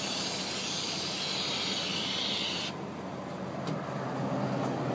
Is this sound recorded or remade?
recorded